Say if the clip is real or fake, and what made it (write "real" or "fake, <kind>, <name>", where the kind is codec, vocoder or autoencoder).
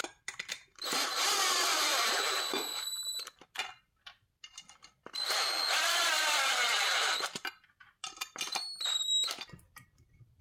fake, vocoder, BigVGAN v2